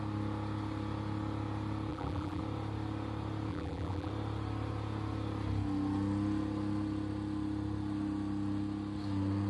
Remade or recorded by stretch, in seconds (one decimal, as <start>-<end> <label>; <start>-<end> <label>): 0.0-1.9 recorded; 1.9-2.4 remade; 2.4-3.5 recorded; 3.5-4.1 remade; 4.1-9.5 recorded